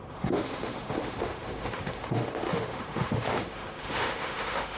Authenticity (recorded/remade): remade